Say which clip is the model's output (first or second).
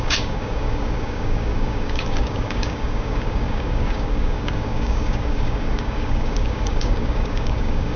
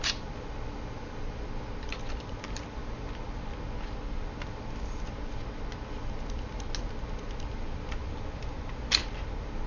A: first